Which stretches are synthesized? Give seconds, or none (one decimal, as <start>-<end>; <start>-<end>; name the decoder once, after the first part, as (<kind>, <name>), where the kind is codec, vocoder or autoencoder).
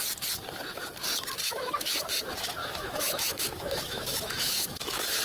1.4-2.2 (autoencoder, DAC-VAE); 2.6-5.2